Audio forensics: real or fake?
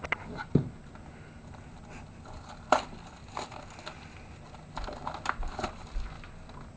real